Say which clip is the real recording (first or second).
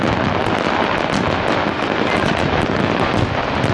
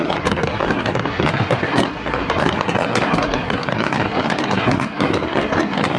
first